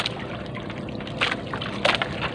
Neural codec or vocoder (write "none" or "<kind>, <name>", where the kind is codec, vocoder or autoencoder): none